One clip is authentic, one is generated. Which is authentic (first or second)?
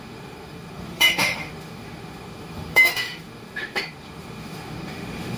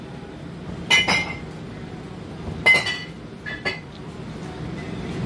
second